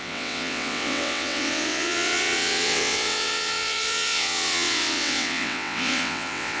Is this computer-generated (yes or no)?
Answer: yes